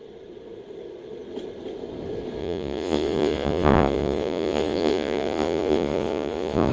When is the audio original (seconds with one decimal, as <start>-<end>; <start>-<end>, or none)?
0.0-2.4